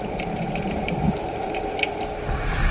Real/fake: fake